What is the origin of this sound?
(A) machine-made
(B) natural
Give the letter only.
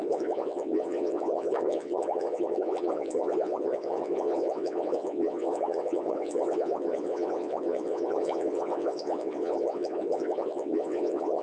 A